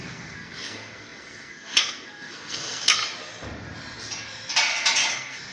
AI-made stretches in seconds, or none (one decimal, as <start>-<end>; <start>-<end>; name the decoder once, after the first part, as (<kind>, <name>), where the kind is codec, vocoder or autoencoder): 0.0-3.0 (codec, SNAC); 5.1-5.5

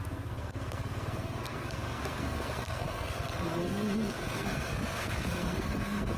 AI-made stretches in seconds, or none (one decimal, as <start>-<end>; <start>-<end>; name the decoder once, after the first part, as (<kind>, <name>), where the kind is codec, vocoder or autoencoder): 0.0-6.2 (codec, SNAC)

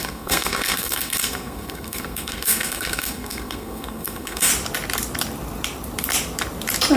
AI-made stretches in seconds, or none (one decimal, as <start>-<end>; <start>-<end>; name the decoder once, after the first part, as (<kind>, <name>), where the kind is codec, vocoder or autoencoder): 0.0-4.5 (codec, SNAC)

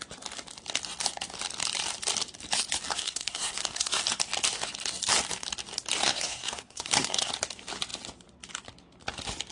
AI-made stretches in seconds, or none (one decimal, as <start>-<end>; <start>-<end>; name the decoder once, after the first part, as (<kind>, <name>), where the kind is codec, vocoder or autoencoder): 2.9-4.0 (codec, SNAC); 6.0-7.3

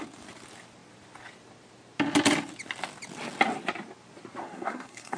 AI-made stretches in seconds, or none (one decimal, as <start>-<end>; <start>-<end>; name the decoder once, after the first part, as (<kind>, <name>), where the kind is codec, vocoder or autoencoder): 4.4-5.2 (codec, SNAC)

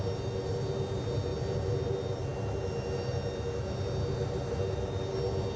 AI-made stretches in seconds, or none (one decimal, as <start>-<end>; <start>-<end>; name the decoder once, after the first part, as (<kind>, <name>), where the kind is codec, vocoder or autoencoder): none

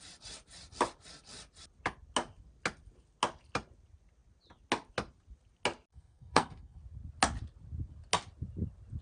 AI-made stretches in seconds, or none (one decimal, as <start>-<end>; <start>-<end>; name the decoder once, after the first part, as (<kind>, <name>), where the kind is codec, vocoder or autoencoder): 5.9-6.8 (codec, SNAC)